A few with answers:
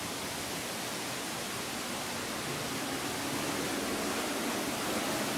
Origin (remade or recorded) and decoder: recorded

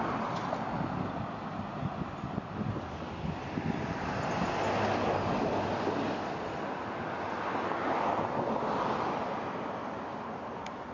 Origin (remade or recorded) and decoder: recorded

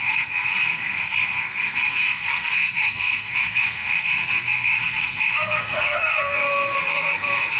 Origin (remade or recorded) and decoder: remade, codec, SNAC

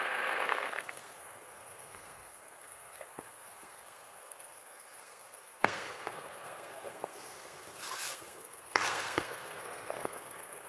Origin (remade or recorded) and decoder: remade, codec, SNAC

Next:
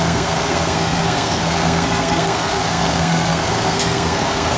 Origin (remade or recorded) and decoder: remade, codec, SNAC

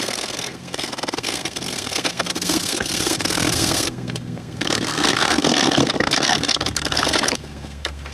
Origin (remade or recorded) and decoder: remade, codec, SNAC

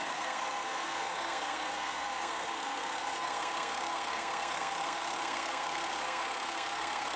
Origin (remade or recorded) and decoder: remade, codec, SNAC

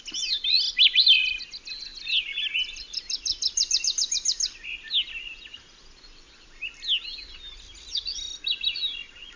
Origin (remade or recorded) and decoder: recorded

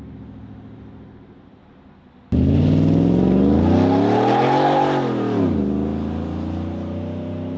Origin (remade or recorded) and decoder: recorded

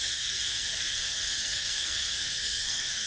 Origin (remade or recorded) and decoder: remade, codec, SNAC